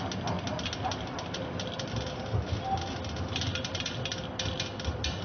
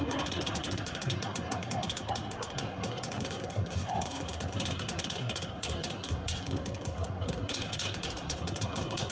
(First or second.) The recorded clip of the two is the first